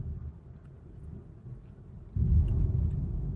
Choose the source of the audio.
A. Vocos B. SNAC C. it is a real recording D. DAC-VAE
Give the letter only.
C